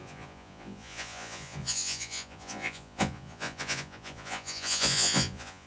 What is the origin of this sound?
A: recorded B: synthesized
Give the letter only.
B